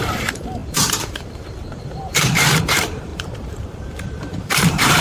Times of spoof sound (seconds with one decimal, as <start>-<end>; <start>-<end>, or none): 0.0-5.0